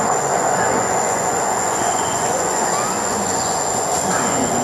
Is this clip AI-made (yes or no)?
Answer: yes